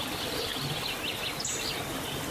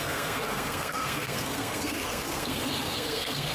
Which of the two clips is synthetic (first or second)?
second